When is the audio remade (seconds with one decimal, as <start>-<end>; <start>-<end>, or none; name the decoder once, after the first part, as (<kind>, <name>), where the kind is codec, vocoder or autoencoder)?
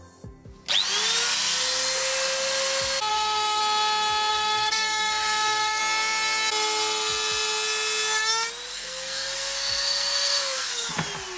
3.1-3.6 (codec, SNAC); 4.3-5.8; 8.7-10.9